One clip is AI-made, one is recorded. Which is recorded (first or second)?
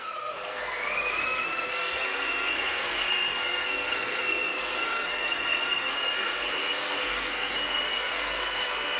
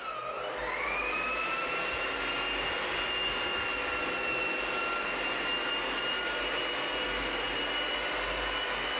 second